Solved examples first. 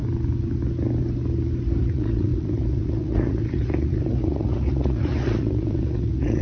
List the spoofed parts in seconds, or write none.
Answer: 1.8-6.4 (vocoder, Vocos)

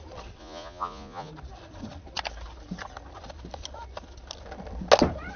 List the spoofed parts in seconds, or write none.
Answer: 0.4-1.3 (vocoder, Vocos)

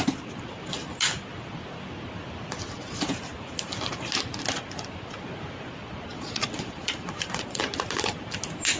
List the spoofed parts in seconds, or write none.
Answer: 5.8-7.6 (vocoder, Vocos)

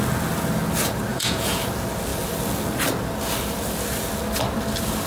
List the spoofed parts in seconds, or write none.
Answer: 1.1-1.6 (vocoder, Vocos)

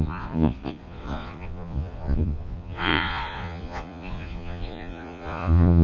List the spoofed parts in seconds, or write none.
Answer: 0.0-5.8 (vocoder, Vocos)

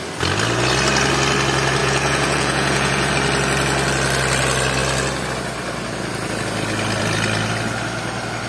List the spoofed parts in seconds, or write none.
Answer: 1.8-3.1 (vocoder, Vocos)